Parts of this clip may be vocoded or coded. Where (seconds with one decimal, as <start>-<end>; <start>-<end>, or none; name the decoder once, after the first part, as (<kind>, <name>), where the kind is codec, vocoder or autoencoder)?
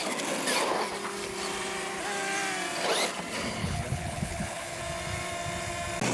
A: 3.6-4.8 (codec, HILCodec)